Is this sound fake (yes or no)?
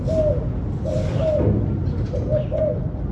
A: no